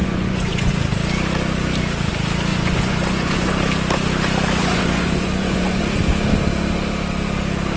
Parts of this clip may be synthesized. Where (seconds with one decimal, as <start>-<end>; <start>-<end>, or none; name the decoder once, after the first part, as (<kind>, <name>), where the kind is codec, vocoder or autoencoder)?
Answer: 0.0-0.7 (vocoder, Vocos); 2.5-3.5; 4.6-5.8